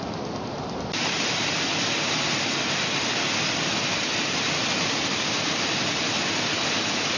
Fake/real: real